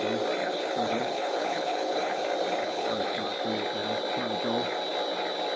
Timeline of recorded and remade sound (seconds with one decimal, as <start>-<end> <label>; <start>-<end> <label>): 0.0-0.4 recorded; 0.4-2.2 remade; 2.2-2.6 recorded; 2.6-3.2 remade; 3.2-5.6 recorded